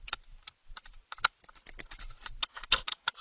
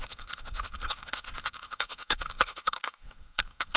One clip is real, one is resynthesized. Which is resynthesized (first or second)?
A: second